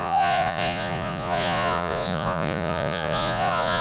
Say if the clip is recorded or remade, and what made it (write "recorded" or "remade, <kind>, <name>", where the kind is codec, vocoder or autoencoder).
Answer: remade, vocoder, Vocos